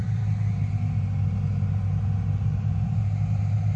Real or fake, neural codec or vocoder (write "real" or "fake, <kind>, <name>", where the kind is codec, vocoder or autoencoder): real